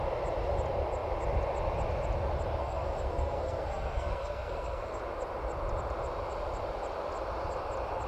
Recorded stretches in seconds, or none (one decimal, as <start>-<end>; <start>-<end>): 0.0-2.6; 5.0-8.1

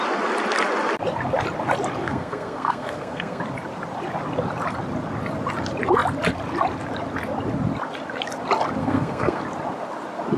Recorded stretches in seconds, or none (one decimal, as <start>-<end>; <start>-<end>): 0.0-2.0; 3.4-8.8; 9.4-10.4

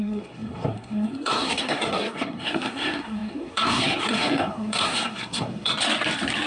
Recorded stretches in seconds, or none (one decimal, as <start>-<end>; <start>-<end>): 5.7-6.5

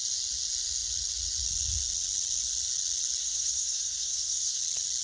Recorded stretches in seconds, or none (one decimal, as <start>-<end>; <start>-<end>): 0.0-3.2; 4.6-5.0

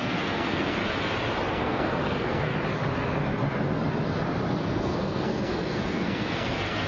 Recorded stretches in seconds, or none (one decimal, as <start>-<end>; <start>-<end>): 0.8-1.5; 2.5-4.6

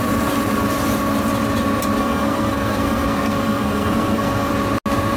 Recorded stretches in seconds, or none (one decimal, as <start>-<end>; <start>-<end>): 0.0-2.0; 4.5-5.2

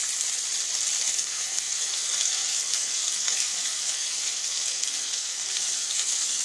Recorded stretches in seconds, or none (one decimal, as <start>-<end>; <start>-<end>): 0.0-1.0